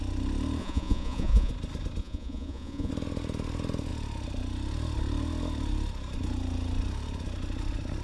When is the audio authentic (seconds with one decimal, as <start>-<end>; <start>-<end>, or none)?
0.0-0.6; 1.5-2.0; 2.9-8.0